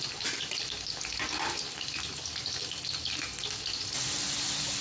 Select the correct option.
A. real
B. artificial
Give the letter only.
A